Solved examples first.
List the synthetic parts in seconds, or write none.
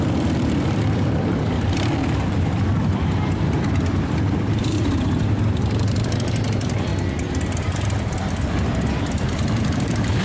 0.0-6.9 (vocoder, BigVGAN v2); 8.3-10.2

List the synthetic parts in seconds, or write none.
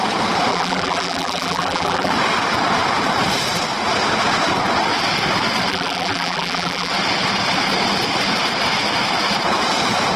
0.5-2.1 (vocoder, BigVGAN v2); 5.7-6.9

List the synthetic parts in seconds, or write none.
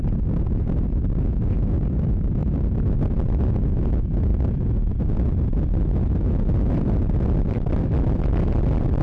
none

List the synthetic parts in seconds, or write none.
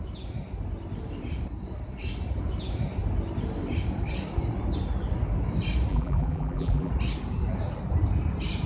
5.9-6.9 (vocoder, BigVGAN v2)